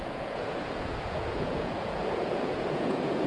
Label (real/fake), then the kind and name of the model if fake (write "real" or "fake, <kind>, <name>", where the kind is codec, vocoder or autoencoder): fake, vocoder, Vocos